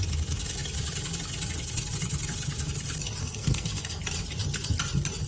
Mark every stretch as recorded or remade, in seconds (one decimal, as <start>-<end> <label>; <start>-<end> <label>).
0.0-3.2 recorded; 3.2-4.0 remade; 4.0-5.3 recorded